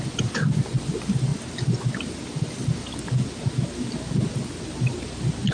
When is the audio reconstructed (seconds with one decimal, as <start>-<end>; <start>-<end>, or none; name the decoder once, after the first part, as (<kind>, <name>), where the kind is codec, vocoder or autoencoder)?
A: none